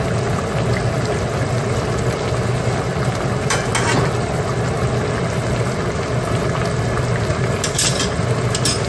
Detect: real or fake real